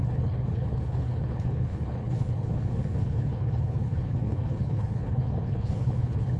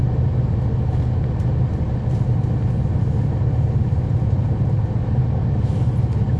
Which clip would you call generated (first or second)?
first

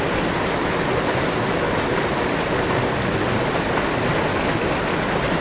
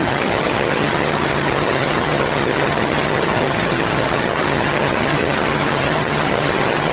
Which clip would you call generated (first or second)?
second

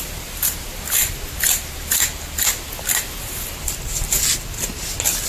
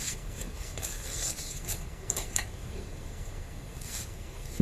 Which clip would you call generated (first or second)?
second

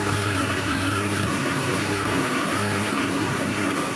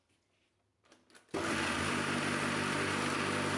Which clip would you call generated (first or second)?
first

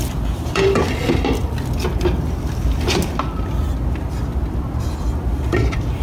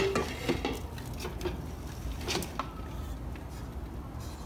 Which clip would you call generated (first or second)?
first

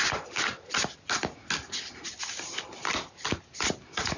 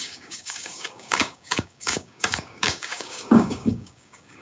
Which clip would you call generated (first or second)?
second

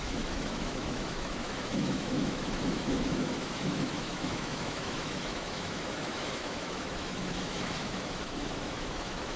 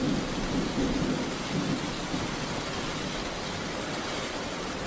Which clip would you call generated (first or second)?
first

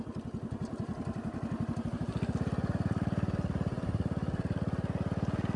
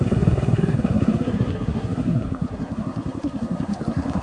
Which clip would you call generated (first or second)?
second